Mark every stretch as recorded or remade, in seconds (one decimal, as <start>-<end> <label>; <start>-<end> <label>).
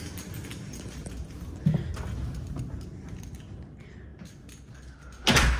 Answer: 0.0-5.6 recorded